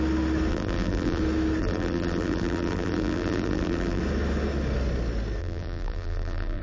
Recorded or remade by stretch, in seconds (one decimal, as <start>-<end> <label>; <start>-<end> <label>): 0.0-0.5 recorded; 0.5-1.2 remade; 1.2-1.6 recorded; 1.6-4.0 remade; 4.0-5.4 recorded; 5.4-6.6 remade

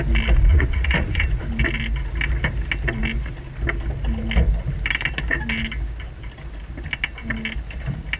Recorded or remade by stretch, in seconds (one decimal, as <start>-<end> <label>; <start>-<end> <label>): 0.0-0.5 recorded; 0.5-1.4 remade; 1.4-8.2 recorded

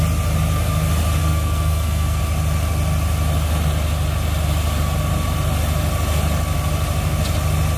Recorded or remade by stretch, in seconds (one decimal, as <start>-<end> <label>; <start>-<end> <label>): 0.0-1.2 recorded; 1.2-2.2 remade; 2.2-7.8 recorded

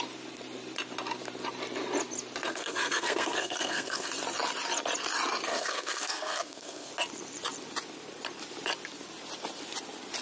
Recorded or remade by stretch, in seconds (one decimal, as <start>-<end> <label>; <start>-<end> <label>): 0.0-2.5 recorded; 2.5-4.1 remade; 4.1-5.5 recorded; 5.5-6.9 remade; 6.9-10.2 recorded

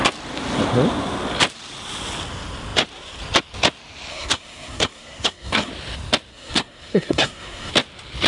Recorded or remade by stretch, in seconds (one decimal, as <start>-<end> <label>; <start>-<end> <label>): 0.0-4.1 recorded; 4.1-5.7 remade; 5.7-6.3 recorded; 6.3-7.7 remade; 7.7-8.3 recorded

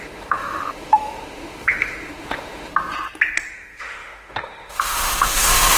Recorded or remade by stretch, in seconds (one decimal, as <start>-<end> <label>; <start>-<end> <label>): 0.0-2.7 remade; 2.7-3.5 recorded; 3.5-5.8 remade